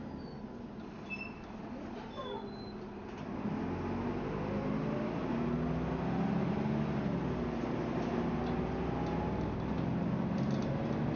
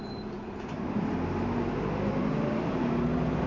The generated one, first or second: second